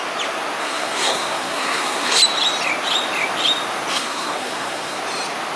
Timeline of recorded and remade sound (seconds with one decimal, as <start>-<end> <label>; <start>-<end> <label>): 0.0-0.6 recorded; 0.6-2.2 remade; 2.2-3.9 recorded; 3.9-5.0 remade; 5.0-5.6 recorded